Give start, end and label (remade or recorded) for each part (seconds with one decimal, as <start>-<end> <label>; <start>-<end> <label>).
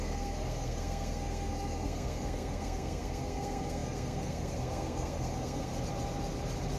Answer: 0.0-5.7 remade; 5.7-6.8 recorded